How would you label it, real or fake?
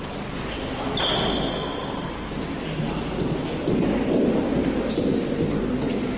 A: real